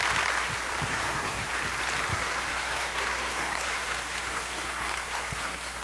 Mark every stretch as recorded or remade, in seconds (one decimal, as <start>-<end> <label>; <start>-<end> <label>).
0.0-0.9 recorded; 0.9-1.5 remade; 1.5-2.1 recorded; 2.1-5.8 remade